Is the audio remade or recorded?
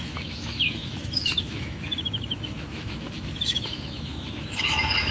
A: remade